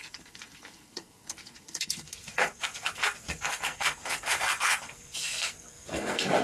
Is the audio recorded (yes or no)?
no